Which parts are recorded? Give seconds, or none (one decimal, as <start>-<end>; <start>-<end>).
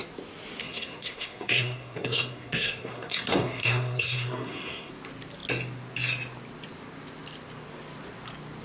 0.0-0.6; 4.9-8.6